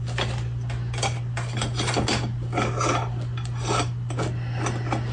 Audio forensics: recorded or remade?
recorded